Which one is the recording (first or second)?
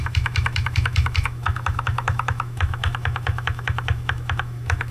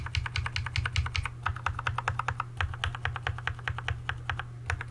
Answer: second